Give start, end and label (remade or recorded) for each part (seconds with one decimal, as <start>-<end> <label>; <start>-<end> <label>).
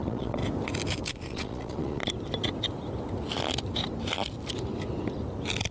0.0-0.4 remade; 0.4-1.1 recorded; 1.1-2.0 remade; 2.0-5.7 recorded